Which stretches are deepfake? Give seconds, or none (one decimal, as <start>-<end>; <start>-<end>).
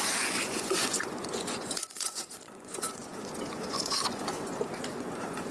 0.0-5.5